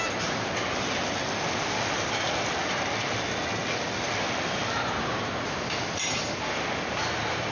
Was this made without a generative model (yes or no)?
yes